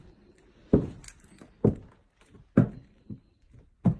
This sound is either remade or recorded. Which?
recorded